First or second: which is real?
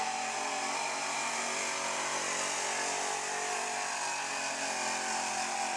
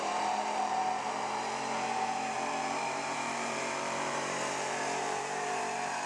first